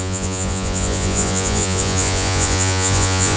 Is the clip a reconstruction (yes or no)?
yes